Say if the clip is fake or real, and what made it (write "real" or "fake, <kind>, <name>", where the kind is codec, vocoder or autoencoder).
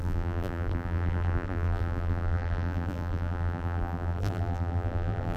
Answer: fake, vocoder, BigVGAN v2